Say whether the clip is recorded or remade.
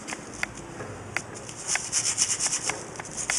recorded